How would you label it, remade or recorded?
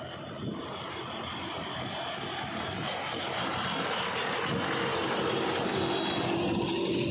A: recorded